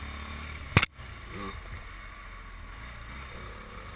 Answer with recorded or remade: recorded